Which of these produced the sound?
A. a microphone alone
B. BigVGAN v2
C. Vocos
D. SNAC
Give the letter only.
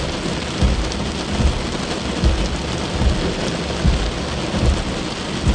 A